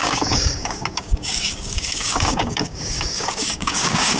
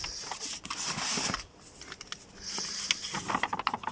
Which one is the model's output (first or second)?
first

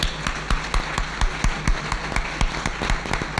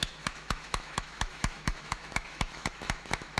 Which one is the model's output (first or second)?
second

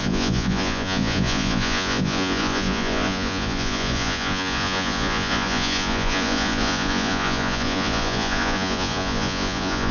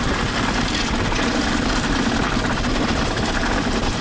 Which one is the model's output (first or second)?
first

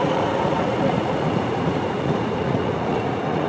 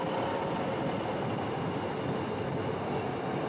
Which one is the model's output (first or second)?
first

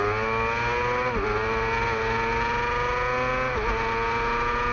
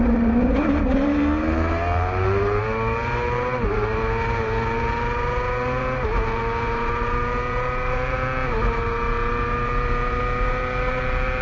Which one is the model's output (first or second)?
second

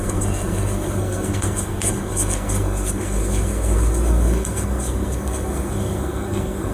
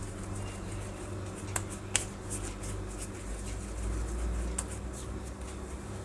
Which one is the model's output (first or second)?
first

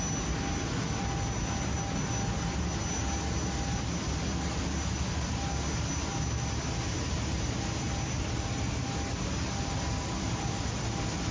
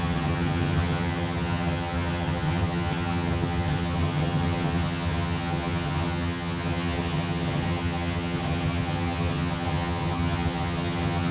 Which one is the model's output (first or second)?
second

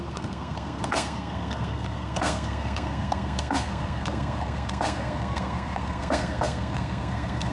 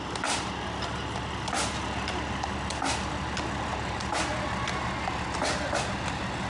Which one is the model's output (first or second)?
first